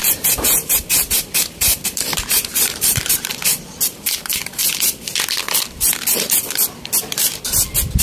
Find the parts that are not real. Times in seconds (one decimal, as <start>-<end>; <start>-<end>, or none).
0.0-3.3; 4.1-4.6